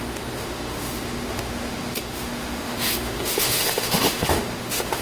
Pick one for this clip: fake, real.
fake